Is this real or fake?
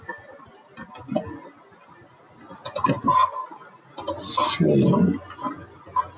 real